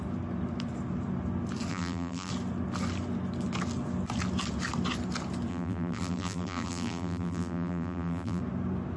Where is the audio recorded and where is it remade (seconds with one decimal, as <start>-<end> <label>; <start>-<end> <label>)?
0.0-1.7 recorded; 1.7-2.3 remade; 2.3-5.5 recorded; 5.5-8.4 remade; 8.4-9.0 recorded